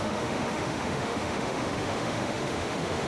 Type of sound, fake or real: fake